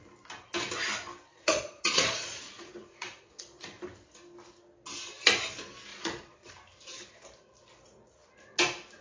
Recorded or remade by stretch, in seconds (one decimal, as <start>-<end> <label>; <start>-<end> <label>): 0.0-1.3 recorded; 1.3-3.8 remade; 3.8-5.9 recorded; 5.9-6.5 remade; 6.5-9.0 recorded